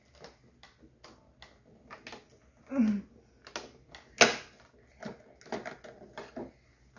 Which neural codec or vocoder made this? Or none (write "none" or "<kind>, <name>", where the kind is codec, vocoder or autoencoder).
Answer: none